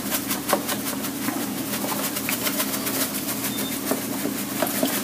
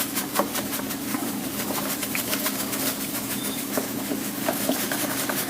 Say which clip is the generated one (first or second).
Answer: second